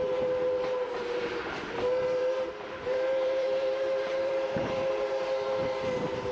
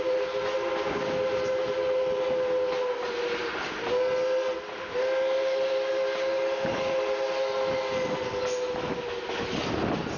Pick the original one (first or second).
second